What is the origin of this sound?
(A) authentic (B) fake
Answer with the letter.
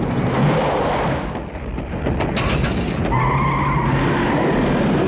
A